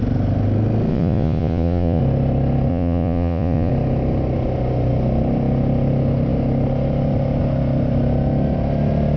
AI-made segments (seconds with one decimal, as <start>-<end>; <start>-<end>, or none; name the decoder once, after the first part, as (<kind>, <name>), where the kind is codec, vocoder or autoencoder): 0.9-2.0 (vocoder, Vocos); 2.7-3.7